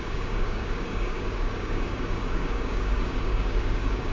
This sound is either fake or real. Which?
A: fake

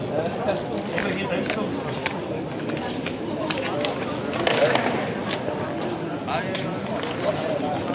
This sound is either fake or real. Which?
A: real